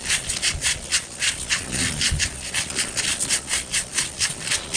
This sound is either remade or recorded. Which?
remade